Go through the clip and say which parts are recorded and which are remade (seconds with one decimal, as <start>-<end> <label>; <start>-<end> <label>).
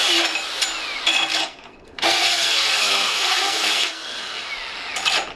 0.0-1.3 recorded; 1.3-4.5 remade; 4.5-5.4 recorded